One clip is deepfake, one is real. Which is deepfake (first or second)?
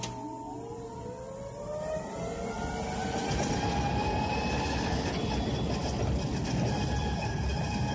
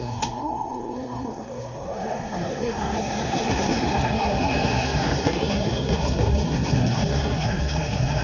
second